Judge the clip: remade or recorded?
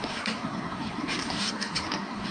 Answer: remade